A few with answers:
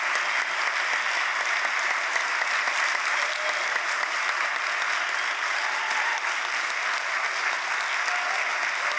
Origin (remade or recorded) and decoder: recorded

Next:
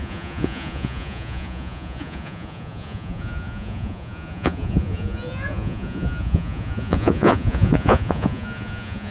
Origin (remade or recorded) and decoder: remade, vocoder, Vocos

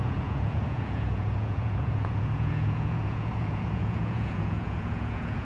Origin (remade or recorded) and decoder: remade, vocoder, Vocos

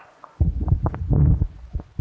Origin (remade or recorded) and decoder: remade, vocoder, Vocos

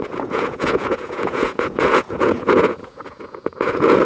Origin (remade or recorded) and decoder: remade, vocoder, Vocos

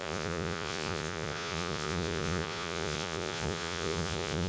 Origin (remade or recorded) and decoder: remade, vocoder, Vocos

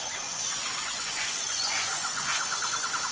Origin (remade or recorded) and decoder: remade, vocoder, Vocos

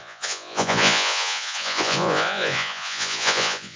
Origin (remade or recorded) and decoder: remade, vocoder, Vocos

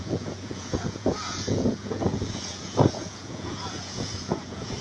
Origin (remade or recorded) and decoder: remade, vocoder, Vocos